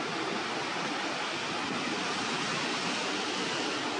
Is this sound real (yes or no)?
yes